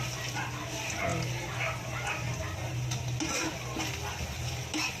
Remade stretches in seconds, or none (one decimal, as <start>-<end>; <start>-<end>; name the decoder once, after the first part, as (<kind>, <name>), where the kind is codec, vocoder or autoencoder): none